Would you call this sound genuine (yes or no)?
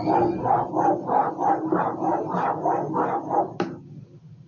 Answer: yes